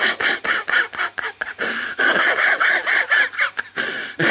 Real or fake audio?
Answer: real